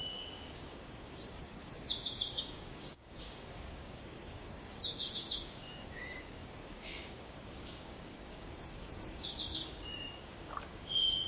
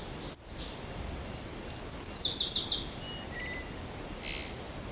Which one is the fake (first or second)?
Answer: first